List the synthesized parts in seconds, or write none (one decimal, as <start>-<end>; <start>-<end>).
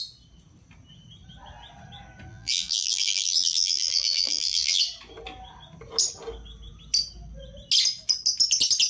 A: 2.3-4.8